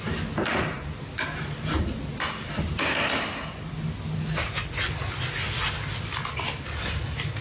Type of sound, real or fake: real